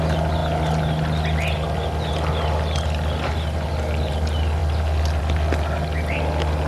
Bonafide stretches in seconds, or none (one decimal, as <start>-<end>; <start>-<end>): 0.0-6.7